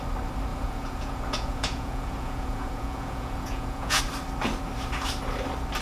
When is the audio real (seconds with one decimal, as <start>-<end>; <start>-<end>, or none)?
0.0-0.5; 4.0-5.8